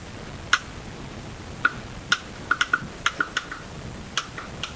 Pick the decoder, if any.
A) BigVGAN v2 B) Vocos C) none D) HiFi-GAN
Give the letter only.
C